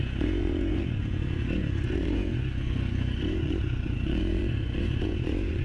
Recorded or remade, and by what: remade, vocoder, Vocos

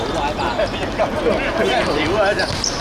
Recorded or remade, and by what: recorded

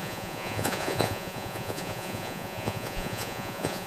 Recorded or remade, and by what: remade, vocoder, Vocos